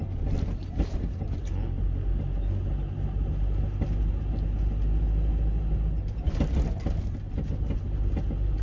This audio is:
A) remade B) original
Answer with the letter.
B